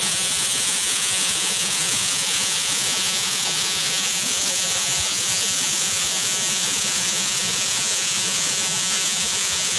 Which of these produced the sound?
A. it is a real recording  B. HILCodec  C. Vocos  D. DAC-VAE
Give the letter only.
C